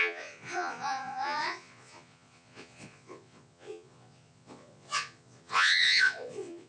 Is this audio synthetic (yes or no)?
yes